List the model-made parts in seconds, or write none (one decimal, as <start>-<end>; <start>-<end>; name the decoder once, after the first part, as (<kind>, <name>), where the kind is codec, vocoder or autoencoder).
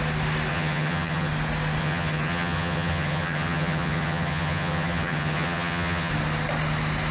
0.5-1.3 (vocoder, HiFi-GAN); 1.8-6.1